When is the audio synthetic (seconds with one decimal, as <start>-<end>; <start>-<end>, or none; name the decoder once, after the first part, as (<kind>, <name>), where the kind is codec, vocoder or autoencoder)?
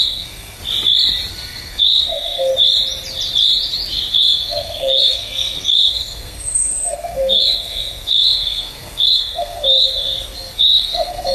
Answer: 0.0-0.6 (codec, SNAC); 1.3-2.5; 4.1-11.3